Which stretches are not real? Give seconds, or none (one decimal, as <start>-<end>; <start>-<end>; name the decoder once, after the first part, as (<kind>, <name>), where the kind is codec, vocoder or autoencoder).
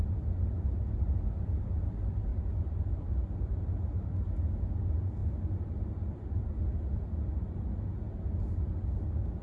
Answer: 2.3-3.6 (vocoder, BigVGAN v2); 5.2-6.4